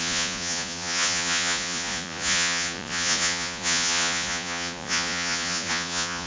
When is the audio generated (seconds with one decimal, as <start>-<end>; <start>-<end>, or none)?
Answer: 0.0-6.3